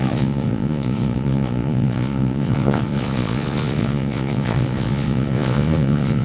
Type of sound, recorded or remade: remade